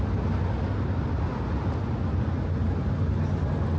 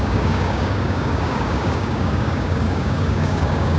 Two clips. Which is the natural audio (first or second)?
first